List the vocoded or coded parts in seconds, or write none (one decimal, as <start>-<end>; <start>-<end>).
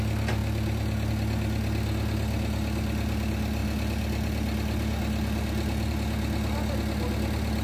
none